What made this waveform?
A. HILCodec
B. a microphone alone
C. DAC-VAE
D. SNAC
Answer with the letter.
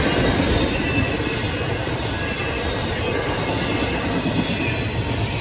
B